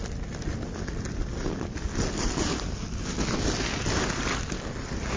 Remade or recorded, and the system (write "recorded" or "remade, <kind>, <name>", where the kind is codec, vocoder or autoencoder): recorded